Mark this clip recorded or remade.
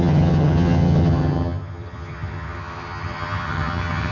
remade